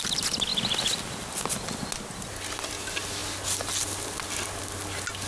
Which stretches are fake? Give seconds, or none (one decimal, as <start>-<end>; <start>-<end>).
none